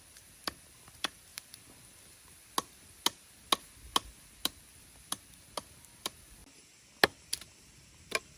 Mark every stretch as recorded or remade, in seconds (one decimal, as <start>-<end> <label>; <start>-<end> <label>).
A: 0.0-1.3 remade; 1.3-4.3 recorded; 4.3-6.4 remade; 6.4-8.4 recorded